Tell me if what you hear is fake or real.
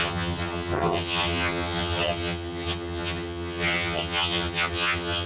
fake